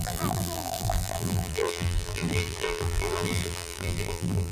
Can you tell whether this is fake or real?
fake